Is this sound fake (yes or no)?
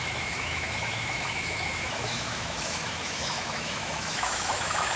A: yes